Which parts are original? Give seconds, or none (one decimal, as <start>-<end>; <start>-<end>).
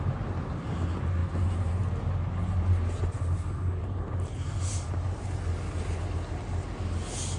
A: 0.0-7.4